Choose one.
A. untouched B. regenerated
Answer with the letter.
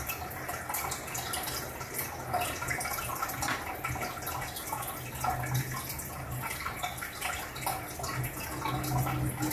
A